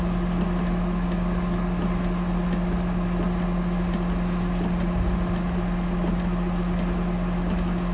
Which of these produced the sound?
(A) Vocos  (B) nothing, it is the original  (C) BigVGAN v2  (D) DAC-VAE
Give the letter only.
B